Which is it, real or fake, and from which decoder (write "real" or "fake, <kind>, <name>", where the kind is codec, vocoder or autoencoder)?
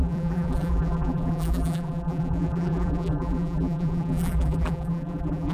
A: fake, vocoder, BigVGAN v2